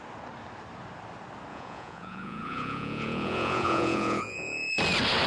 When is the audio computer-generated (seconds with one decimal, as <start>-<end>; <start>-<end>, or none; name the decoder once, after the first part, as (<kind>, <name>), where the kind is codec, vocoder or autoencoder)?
1.5-4.7 (vocoder, Vocos)